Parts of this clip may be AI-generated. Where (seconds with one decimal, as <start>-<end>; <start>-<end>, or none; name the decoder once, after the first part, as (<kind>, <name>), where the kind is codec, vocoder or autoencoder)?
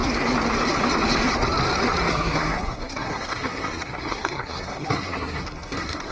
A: 2.1-6.1 (codec, SNAC)